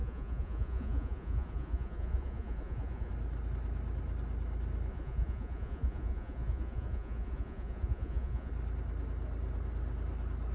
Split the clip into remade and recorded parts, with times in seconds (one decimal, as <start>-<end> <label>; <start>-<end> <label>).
0.0-3.1 remade; 3.1-4.9 recorded; 4.9-8.5 remade; 8.5-10.5 recorded